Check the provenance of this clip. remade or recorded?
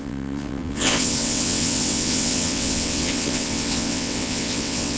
remade